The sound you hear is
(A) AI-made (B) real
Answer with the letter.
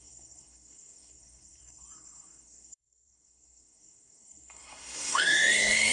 A